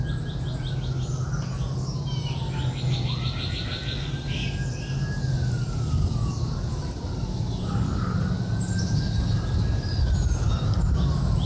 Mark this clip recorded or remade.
recorded